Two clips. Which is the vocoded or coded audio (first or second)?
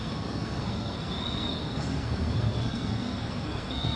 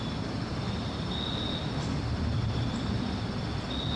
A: first